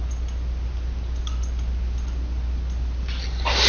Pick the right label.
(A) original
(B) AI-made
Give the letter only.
A